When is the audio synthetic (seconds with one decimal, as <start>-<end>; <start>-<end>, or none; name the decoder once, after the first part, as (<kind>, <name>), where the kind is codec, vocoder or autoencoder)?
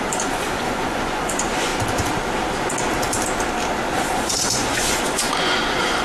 0.0-1.7 (vocoder, Vocos); 3.9-6.0